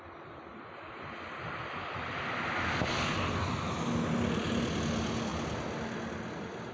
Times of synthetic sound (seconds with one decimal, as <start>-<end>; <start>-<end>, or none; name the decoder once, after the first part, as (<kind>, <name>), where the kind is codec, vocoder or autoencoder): none